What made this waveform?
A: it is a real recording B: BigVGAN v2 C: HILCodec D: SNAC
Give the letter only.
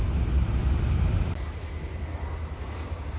A